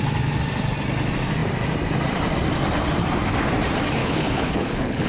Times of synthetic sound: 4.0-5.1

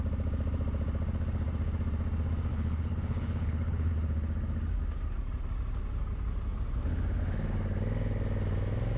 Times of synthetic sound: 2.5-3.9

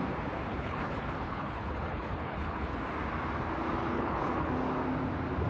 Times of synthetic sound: 0.5-2.8; 3.8-4.5

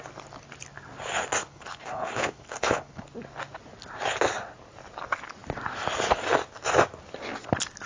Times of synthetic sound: 1.4-3.0